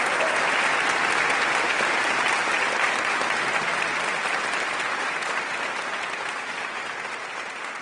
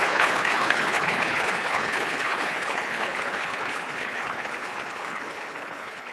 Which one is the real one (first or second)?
first